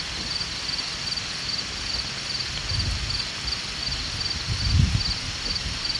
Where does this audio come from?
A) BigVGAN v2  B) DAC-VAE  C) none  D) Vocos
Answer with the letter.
C